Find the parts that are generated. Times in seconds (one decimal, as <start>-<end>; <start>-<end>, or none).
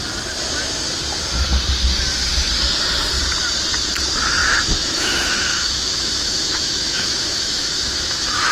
4.4-8.5